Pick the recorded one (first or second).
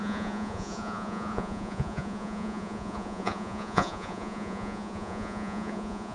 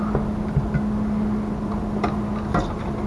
second